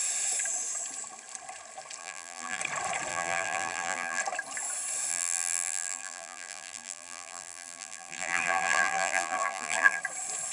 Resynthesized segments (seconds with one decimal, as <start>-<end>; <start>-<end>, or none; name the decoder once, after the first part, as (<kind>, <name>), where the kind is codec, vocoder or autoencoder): 2.0-2.6 (vocoder, BigVGAN v2); 3.1-4.2; 5.1-10.0